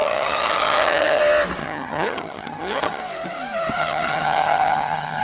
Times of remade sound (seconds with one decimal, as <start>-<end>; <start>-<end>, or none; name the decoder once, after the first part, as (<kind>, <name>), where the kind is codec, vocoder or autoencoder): 0.0-1.2 (vocoder, HiFi-GAN); 1.6-3.0; 3.8-5.2

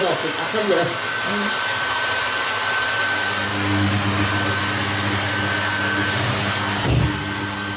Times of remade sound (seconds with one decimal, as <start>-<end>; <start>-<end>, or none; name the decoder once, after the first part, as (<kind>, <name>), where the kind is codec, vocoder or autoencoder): none

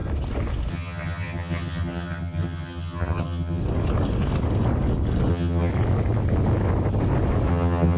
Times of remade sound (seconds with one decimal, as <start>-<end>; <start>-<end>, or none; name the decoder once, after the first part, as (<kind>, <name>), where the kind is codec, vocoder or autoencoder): 0.7-3.6 (vocoder, HiFi-GAN); 5.3-5.7; 7.5-8.0

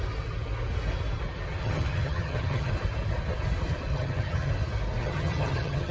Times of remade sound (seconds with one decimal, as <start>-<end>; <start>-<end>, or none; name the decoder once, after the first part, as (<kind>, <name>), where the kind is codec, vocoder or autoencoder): 1.6-2.7 (vocoder, HiFi-GAN); 3.9-4.5; 5.0-5.9

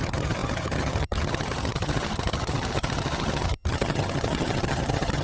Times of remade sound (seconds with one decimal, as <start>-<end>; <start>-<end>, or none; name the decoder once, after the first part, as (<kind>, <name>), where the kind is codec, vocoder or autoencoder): 0.0-5.2 (vocoder, HiFi-GAN)